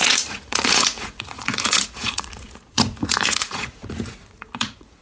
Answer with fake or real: fake